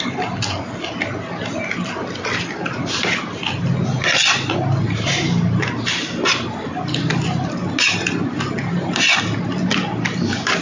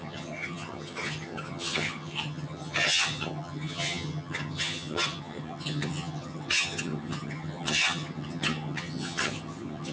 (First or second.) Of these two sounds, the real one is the first